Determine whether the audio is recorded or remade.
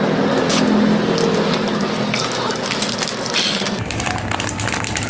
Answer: recorded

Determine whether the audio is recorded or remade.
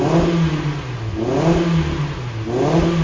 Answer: recorded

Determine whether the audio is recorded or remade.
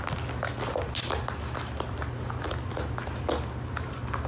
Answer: recorded